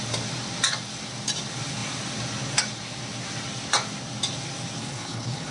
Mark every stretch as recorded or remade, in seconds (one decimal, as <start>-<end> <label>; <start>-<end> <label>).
0.0-4.8 recorded; 4.8-5.5 remade